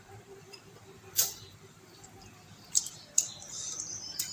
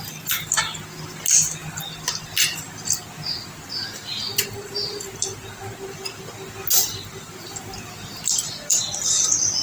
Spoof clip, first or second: first